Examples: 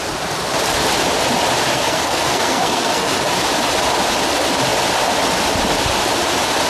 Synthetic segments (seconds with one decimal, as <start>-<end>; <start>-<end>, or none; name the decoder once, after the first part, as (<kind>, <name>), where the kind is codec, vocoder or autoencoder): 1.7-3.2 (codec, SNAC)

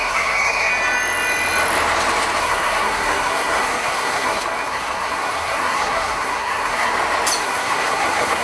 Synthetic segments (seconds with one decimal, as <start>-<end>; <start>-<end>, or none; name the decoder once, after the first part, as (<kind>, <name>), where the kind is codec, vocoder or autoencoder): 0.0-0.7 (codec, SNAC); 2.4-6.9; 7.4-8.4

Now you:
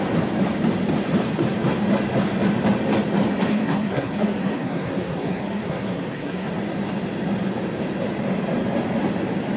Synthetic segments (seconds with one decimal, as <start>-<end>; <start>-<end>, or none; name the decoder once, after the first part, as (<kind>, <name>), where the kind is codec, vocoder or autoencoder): 3.5-6.5 (codec, SNAC)

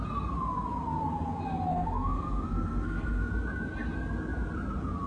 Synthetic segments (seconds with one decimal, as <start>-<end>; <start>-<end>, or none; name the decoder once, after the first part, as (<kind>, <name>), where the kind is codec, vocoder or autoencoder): 1.7-3.3 (codec, SNAC)

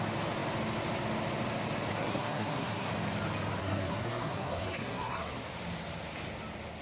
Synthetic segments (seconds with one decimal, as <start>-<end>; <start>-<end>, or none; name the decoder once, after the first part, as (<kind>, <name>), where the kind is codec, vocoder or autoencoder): 1.9-2.9 (codec, SNAC); 3.6-5.3

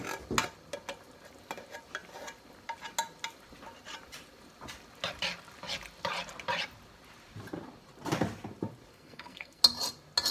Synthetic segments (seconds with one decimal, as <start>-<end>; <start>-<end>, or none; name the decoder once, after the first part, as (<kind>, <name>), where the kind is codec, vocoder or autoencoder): 8.9-9.6 (codec, SNAC)